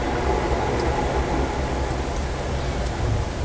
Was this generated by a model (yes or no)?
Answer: no